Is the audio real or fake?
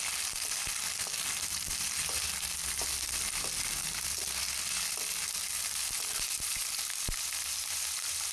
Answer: real